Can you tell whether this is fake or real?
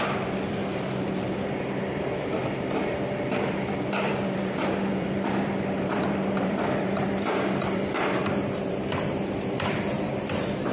fake